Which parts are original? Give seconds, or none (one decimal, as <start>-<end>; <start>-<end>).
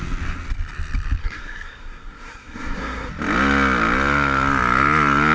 0.0-1.2; 3.1-5.3